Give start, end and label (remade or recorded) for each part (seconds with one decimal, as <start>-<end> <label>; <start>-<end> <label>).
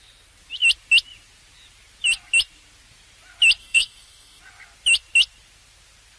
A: 0.0-3.6 recorded; 3.6-4.4 remade; 4.4-6.2 recorded